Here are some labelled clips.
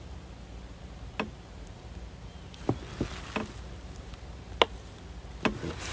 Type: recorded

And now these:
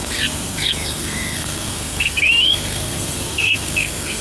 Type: remade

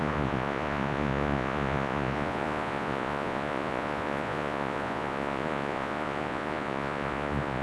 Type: remade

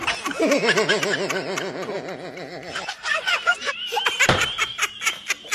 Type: recorded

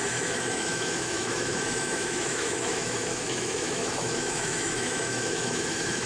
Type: remade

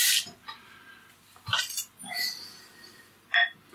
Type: remade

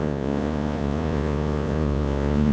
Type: remade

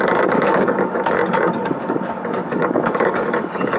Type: remade